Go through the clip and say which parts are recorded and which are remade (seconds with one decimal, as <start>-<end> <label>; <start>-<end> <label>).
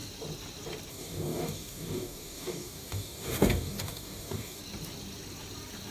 0.0-0.9 recorded; 0.9-4.6 remade; 4.6-5.9 recorded